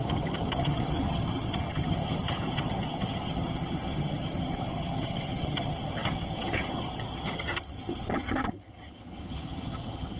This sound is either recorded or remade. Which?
remade